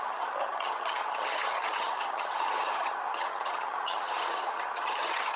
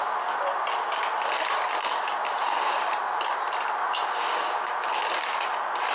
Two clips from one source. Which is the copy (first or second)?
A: first